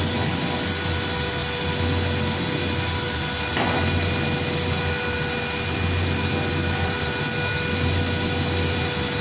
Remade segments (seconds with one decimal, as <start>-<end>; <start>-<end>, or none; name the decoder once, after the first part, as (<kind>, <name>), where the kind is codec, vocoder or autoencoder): none